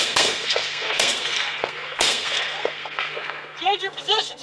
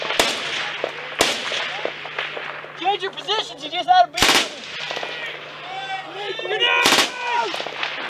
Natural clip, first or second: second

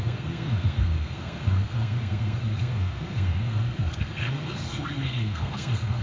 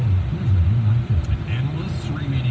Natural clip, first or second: second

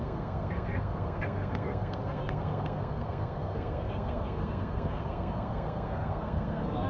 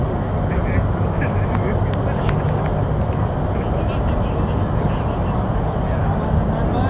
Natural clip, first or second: second